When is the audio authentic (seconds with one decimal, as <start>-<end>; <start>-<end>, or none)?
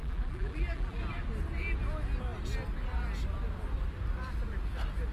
1.0-5.1